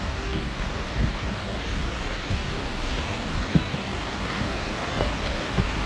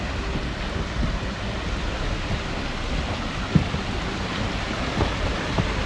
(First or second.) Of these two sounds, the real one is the second